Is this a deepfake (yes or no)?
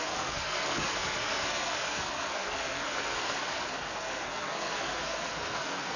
yes